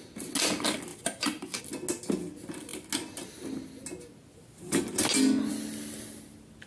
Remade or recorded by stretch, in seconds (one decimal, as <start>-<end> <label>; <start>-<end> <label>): 0.0-0.9 recorded; 0.9-1.6 remade; 1.6-6.7 recorded